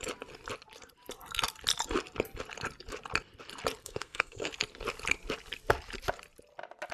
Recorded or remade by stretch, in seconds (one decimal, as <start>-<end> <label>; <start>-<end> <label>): 0.0-3.8 recorded; 3.8-4.5 remade; 4.5-6.9 recorded